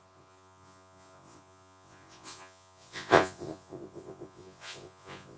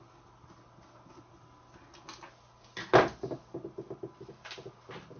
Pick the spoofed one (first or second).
first